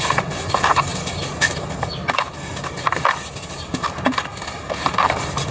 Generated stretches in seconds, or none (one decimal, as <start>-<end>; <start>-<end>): none

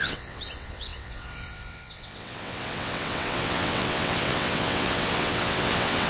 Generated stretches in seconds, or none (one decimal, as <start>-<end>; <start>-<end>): 0.0-6.1